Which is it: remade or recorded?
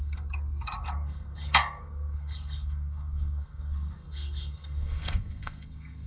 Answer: remade